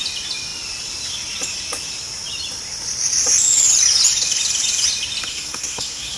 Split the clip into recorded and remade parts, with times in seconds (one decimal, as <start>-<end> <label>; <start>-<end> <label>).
0.0-5.3 recorded; 5.3-6.2 remade